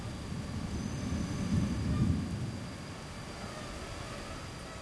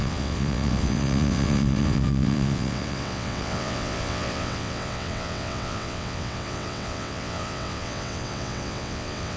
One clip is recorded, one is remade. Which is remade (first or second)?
second